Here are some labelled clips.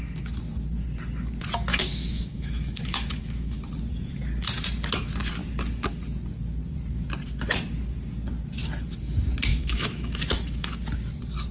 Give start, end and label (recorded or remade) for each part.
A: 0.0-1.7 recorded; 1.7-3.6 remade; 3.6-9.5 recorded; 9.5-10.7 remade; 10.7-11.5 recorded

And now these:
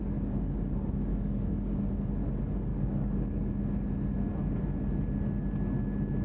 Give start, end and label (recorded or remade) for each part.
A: 0.0-1.1 recorded; 1.1-1.9 remade; 1.9-2.7 recorded; 2.7-3.5 remade; 3.5-6.2 recorded